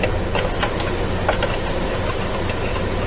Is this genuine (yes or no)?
yes